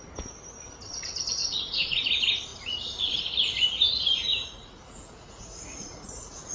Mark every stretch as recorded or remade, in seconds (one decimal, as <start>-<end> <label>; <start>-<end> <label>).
0.0-1.4 recorded; 1.4-2.0 remade; 2.0-4.3 recorded; 4.3-6.5 remade